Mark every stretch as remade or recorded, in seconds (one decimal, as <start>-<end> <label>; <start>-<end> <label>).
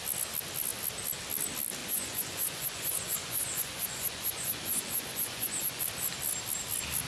0.0-1.8 recorded; 1.8-5.8 remade; 5.8-7.1 recorded